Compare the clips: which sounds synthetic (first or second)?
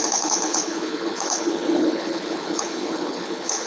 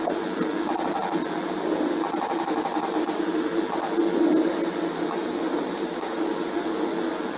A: first